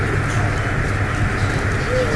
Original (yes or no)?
yes